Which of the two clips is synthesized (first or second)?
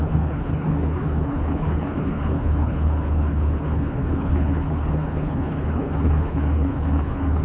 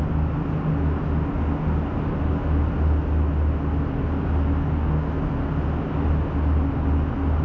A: first